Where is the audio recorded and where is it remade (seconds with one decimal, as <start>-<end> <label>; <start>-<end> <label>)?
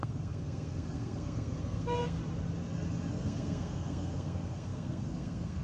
0.0-2.2 remade; 2.2-3.1 recorded; 3.1-5.6 remade